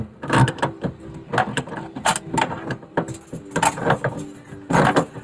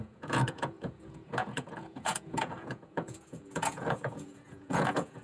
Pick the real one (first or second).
first